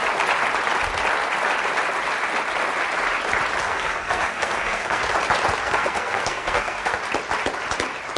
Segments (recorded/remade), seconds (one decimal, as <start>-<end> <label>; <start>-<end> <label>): 0.0-3.6 recorded; 3.6-5.0 remade; 5.0-5.6 recorded; 5.6-7.0 remade; 7.0-8.2 recorded